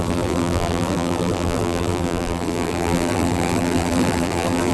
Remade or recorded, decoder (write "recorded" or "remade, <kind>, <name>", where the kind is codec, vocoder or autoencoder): remade, vocoder, BigVGAN v2